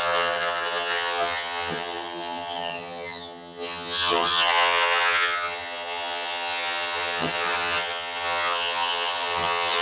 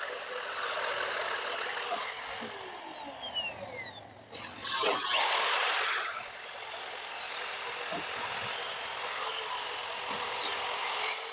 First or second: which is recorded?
second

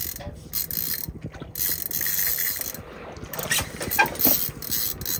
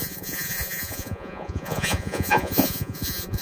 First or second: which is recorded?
first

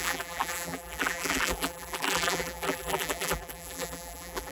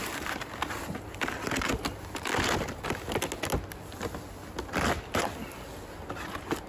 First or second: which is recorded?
second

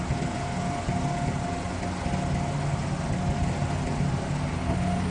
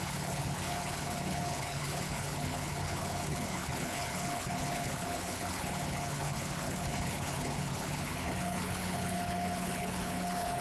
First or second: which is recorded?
first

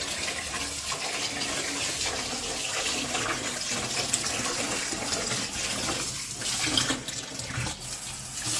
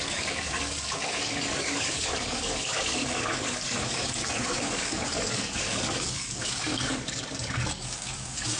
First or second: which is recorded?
first